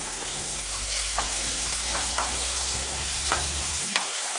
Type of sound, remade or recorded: remade